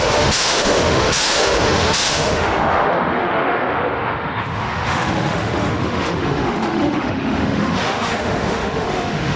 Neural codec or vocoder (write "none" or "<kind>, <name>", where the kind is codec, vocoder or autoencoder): autoencoder, DAC-VAE